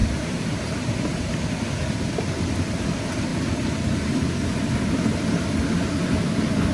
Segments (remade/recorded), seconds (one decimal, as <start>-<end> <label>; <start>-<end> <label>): 0.0-1.5 remade; 1.5-6.7 recorded